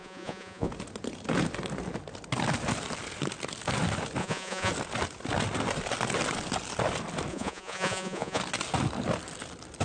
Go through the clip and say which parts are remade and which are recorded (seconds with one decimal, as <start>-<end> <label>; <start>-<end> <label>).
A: 0.0-0.7 remade; 0.7-4.2 recorded; 4.2-4.7 remade; 4.7-7.3 recorded; 7.3-8.4 remade; 8.4-9.8 recorded